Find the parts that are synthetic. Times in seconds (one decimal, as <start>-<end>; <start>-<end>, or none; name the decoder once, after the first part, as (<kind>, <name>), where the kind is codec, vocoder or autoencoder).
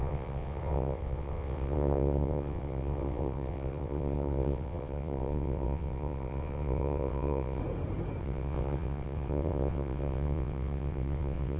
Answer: 0.0-7.6 (vocoder, WaveNeXt); 8.2-11.6